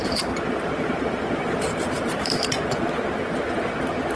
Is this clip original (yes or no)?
no